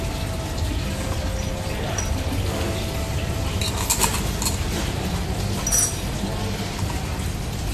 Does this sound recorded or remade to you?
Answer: recorded